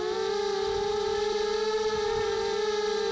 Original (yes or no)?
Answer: no